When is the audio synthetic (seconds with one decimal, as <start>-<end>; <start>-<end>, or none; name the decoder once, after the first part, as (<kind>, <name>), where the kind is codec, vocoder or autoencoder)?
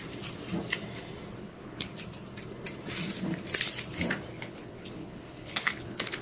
1.4-1.9 (codec, HILCodec); 4.3-6.2